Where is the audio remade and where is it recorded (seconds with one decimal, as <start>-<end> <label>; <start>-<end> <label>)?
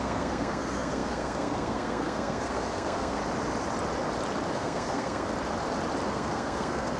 0.0-3.2 remade; 3.2-4.5 recorded; 4.5-5.3 remade; 5.3-6.1 recorded; 6.1-7.0 remade